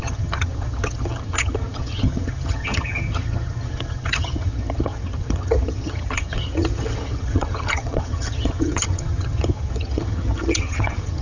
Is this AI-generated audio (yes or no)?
yes